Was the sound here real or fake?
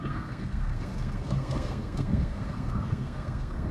fake